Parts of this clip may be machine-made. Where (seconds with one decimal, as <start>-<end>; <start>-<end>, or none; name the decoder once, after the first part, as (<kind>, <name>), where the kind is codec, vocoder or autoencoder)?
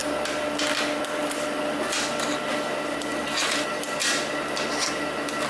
none